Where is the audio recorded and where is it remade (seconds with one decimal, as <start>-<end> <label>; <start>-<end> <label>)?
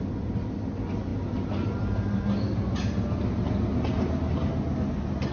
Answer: 0.0-5.3 recorded